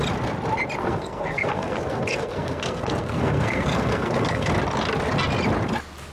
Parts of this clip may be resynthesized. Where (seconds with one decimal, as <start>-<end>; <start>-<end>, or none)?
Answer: 0.8-4.5